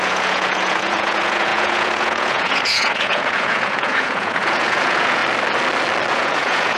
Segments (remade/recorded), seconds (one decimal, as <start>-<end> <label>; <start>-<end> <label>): 0.0-5.2 remade; 5.2-6.1 recorded; 6.1-6.8 remade